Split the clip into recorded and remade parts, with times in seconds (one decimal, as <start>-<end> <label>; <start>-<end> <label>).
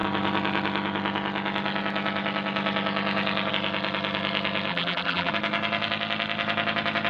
0.0-4.7 recorded; 4.7-5.3 remade; 5.3-7.1 recorded